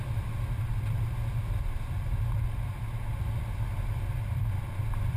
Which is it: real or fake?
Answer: fake